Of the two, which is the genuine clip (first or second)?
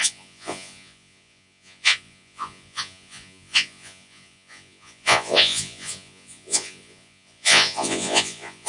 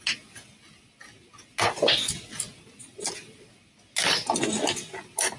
second